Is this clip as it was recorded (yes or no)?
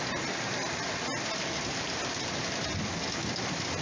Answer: yes